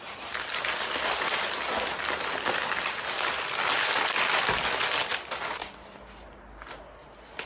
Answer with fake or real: real